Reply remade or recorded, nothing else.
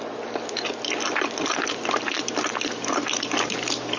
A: recorded